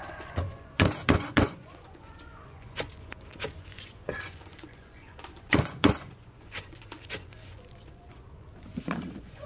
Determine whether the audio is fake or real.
fake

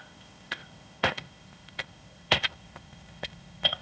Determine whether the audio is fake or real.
fake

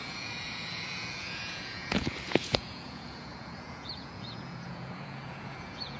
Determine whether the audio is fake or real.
fake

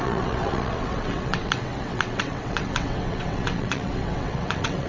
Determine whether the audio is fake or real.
fake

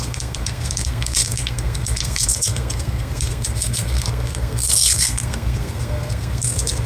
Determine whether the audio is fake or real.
fake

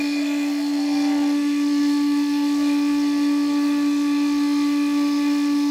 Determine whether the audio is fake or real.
fake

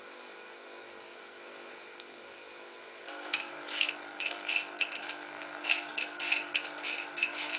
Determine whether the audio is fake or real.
fake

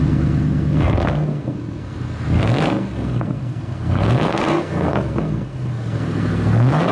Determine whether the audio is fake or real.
fake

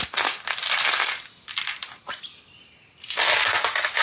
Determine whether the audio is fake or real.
real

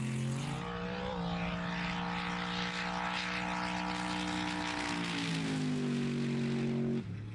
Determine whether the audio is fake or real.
real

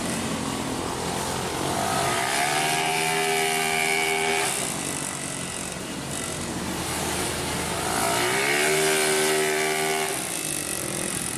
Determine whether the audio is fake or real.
real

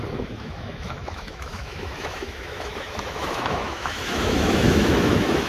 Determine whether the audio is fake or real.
fake